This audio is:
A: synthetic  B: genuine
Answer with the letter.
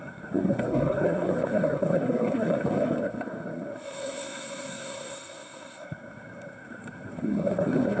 A